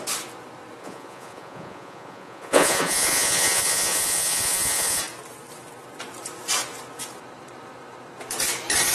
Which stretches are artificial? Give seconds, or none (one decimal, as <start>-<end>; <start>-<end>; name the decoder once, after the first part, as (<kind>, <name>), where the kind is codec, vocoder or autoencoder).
0.8-5.0 (vocoder, Vocos)